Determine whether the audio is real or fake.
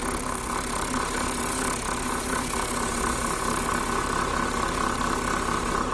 real